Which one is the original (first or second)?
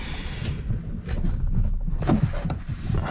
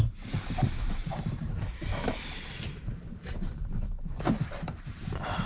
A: first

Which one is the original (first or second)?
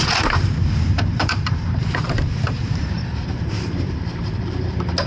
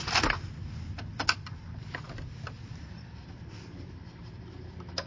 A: second